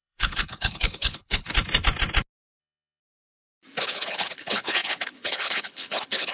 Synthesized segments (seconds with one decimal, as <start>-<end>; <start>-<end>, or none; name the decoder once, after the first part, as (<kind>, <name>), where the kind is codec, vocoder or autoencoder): 0.0-1.5 (codec, HILCodec); 2.6-3.0; 3.8-6.3